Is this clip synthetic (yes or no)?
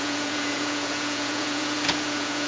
yes